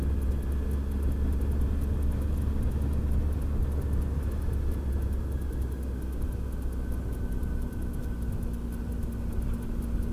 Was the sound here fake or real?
real